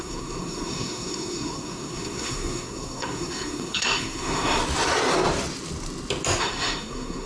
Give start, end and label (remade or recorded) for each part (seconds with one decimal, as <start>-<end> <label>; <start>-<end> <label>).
0.0-4.6 remade; 4.6-6.4 recorded; 6.4-7.3 remade